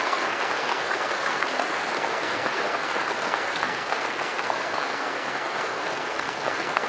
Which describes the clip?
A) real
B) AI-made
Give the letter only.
B